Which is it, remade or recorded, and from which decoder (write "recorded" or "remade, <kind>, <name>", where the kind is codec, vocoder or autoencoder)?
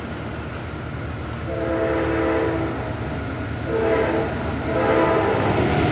recorded